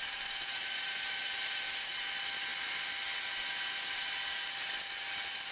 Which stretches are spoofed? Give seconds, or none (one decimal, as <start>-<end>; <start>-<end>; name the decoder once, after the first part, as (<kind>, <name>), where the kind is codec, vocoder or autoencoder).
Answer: none